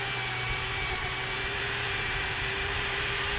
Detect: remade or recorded remade